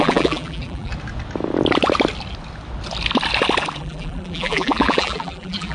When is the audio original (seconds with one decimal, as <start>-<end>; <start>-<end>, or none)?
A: 0.9-3.8